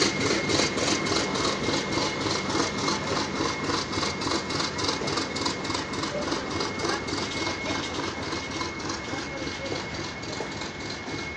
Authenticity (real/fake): real